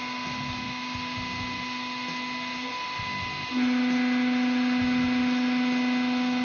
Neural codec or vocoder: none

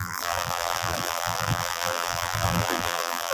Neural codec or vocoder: vocoder, BigVGAN v2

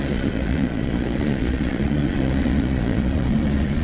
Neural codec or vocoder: vocoder, Vocos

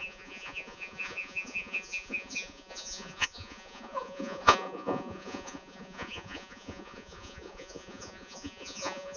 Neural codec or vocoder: vocoder, Vocos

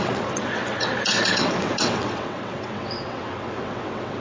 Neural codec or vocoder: vocoder, WaveNeXt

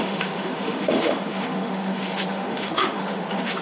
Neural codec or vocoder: autoencoder, DAC-VAE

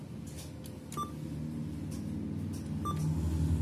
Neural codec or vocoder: none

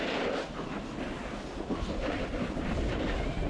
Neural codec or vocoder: none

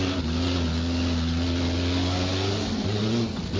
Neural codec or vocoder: none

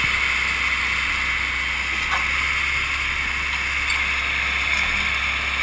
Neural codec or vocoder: none